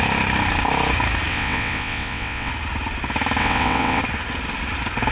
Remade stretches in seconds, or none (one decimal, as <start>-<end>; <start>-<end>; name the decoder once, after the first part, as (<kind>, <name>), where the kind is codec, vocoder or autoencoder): 1.3-2.5 (vocoder, WaveNeXt); 3.4-4.0